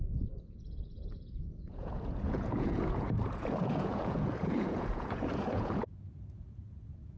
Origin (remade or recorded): remade